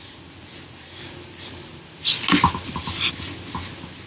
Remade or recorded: recorded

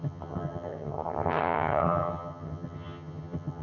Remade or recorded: remade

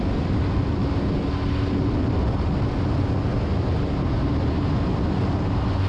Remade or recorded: recorded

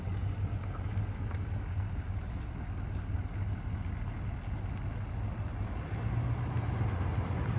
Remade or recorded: recorded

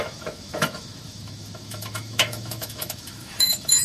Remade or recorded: remade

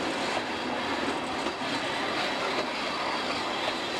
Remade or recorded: recorded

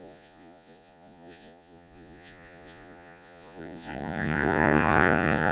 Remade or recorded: remade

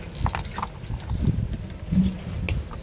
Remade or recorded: recorded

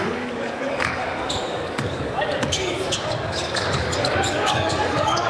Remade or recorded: remade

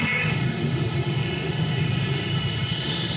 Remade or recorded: remade